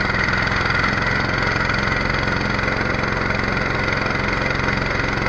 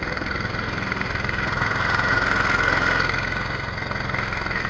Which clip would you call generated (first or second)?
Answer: second